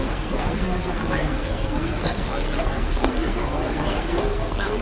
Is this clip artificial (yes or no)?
yes